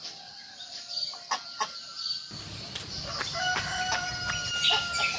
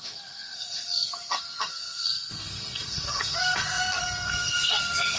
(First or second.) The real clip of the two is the first